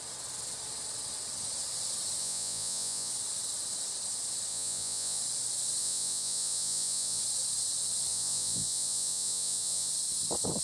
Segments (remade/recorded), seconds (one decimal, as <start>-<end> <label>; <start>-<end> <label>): 0.0-2.2 recorded; 2.2-3.1 remade; 3.1-4.5 recorded; 4.5-5.2 remade; 5.2-5.8 recorded; 5.8-7.2 remade; 7.2-8.1 recorded; 8.1-9.9 remade; 9.9-10.6 recorded